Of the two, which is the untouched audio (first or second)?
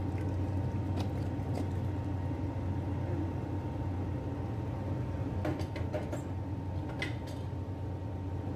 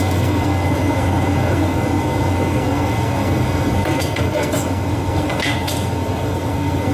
first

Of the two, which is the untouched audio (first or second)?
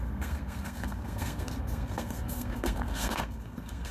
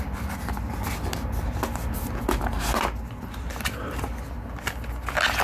second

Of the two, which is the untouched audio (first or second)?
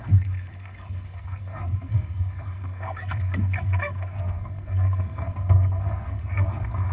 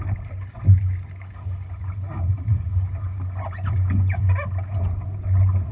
second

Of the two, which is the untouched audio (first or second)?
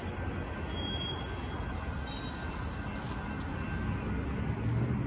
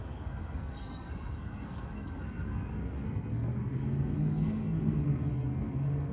first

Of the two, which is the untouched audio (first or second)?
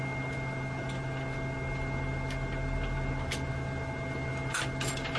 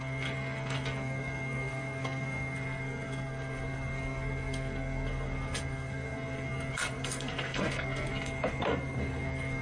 first